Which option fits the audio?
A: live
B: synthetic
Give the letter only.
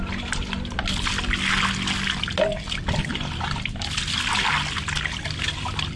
A